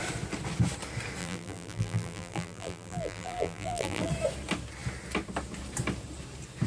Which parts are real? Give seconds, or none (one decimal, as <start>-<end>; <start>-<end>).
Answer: 0.0-1.2; 4.1-6.7